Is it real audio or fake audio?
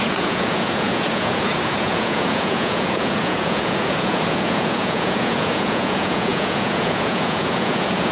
fake